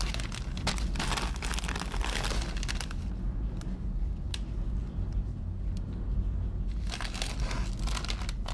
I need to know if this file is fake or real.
real